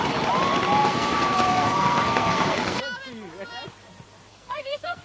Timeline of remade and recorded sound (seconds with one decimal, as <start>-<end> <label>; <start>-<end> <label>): 0.0-0.8 recorded; 0.8-2.8 remade; 2.8-4.3 recorded; 4.3-5.0 remade

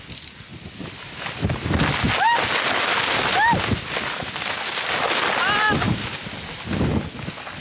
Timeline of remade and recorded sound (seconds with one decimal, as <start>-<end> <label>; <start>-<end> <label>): 0.0-7.6 recorded

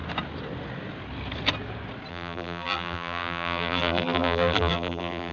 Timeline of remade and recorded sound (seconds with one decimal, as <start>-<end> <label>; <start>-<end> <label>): 0.0-2.1 recorded; 2.1-5.3 remade

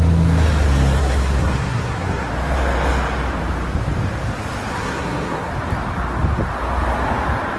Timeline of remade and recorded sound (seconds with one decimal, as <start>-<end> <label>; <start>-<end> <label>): 0.0-1.0 recorded; 1.0-2.3 remade; 2.3-4.7 recorded; 4.7-5.5 remade; 5.5-7.6 recorded

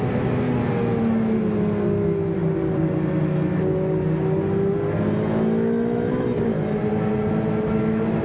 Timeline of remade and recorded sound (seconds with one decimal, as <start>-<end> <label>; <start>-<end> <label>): 0.0-8.2 recorded